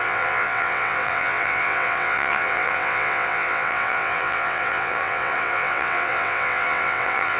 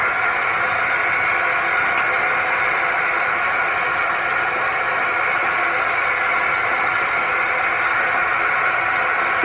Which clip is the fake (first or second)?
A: first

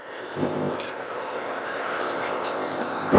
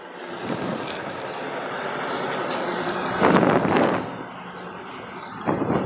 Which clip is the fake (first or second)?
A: first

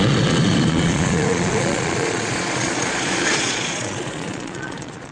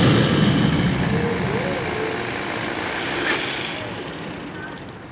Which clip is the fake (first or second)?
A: first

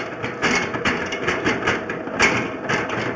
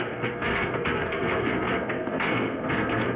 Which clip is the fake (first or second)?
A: second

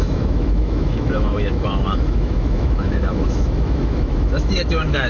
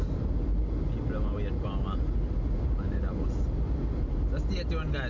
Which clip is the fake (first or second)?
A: first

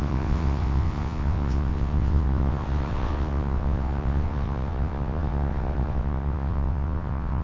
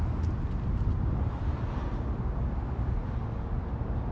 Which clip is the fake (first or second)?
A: first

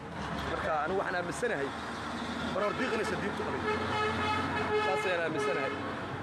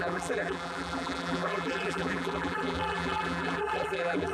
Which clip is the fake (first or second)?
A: second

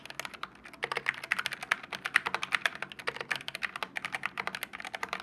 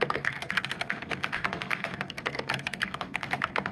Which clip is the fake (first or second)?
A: second